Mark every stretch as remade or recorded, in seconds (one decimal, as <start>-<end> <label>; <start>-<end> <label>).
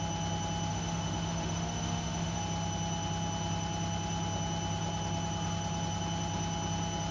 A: 0.0-0.7 recorded; 0.7-2.4 remade; 2.4-7.1 recorded